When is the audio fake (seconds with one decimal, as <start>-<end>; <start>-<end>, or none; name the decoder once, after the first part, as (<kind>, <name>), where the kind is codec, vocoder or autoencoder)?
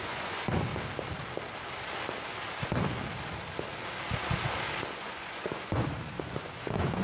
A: 0.0-0.7 (vocoder, Vocos); 4.9-7.0